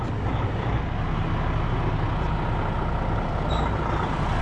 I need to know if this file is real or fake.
real